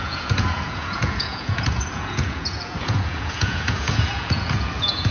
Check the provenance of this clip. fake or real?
fake